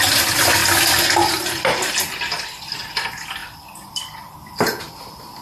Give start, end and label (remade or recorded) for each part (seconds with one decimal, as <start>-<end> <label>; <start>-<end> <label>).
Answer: 0.0-5.4 recorded